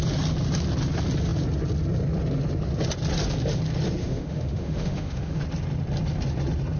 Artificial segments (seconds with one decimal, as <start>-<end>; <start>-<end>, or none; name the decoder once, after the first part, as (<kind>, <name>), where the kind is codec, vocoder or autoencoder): 4.0-5.4 (autoencoder, DAC-VAE)